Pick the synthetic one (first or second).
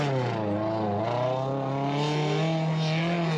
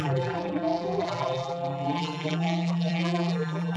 second